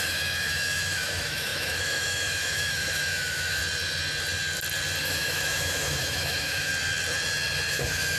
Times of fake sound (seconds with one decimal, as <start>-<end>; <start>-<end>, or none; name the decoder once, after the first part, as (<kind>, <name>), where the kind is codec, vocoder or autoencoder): 0.0-3.6 (autoencoder, DAC-VAE); 5.0-6.7; 7.7-8.2